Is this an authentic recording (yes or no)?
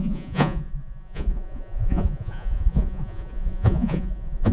no